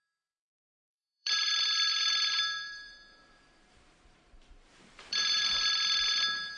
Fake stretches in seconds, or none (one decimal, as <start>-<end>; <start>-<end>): 0.6-1.5; 1.9-5.4